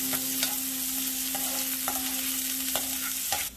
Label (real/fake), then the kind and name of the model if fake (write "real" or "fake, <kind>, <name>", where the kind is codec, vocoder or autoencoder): real